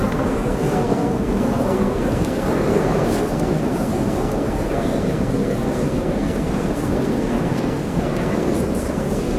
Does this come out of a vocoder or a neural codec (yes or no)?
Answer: yes